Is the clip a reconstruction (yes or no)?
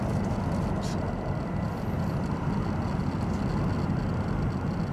no